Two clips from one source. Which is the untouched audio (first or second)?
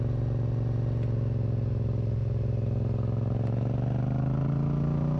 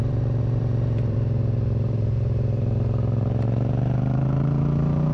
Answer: first